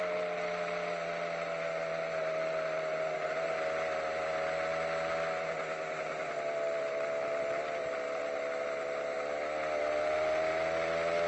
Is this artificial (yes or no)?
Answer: no